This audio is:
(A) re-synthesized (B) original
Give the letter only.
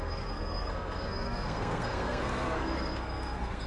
A